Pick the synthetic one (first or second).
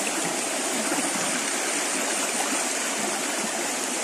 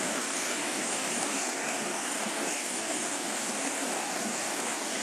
second